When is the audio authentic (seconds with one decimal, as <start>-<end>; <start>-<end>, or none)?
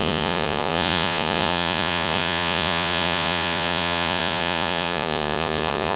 none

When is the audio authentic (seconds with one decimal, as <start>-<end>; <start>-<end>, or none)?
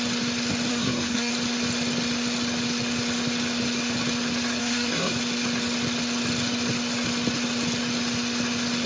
0.0-0.7; 1.3-4.6; 5.1-8.9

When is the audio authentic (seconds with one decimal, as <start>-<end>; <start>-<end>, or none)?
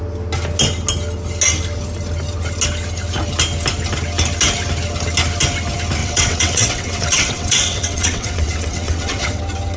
0.0-6.0; 9.4-9.8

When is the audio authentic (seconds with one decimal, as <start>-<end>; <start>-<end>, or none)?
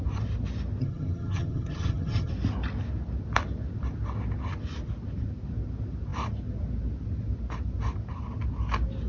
0.0-0.8; 2.3-9.1